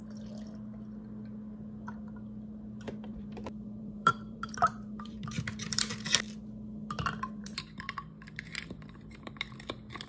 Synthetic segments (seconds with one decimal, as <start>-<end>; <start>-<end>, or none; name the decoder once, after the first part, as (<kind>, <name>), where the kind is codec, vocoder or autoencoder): 3.1-5.4 (vocoder, BigVGAN v2); 7.4-9.3